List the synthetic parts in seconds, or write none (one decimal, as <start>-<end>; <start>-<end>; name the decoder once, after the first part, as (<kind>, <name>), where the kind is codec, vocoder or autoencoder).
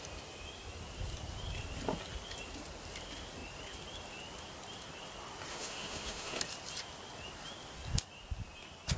5.5-6.4 (autoencoder, DAC-VAE)